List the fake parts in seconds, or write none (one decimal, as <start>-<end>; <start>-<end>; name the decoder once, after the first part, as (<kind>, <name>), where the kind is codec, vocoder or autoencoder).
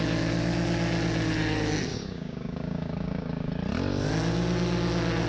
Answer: 1.9-3.5 (codec, DAC)